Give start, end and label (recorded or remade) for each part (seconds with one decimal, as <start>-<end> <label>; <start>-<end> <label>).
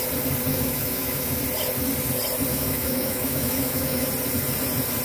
0.0-0.5 recorded; 0.5-1.4 remade; 1.4-2.5 recorded; 2.5-4.1 remade; 4.1-5.0 recorded